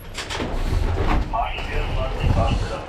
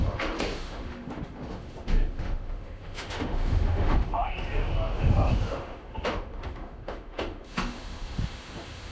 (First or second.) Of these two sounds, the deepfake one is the second